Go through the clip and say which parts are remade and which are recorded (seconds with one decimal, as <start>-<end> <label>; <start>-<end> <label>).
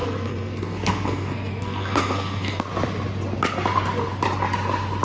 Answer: 0.0-2.6 remade; 2.6-5.0 recorded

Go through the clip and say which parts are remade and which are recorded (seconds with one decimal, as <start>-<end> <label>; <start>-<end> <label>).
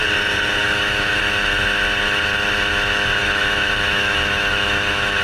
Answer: 0.0-0.6 recorded; 0.6-1.2 remade; 1.2-3.2 recorded; 3.2-5.2 remade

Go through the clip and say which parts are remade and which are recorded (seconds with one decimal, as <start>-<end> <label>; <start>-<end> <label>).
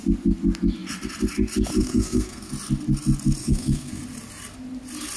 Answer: 0.0-1.8 recorded; 1.8-2.5 remade; 2.5-3.4 recorded; 3.4-4.0 remade; 4.0-5.2 recorded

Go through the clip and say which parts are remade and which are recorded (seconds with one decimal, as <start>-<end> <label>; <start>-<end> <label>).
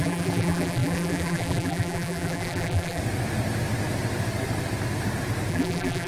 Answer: 0.0-3.0 remade; 3.0-5.5 recorded; 5.5-6.1 remade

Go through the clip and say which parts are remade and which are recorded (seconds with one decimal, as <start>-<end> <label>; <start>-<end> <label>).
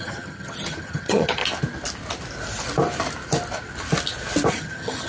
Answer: 0.0-1.4 remade; 1.4-4.5 recorded; 4.5-5.1 remade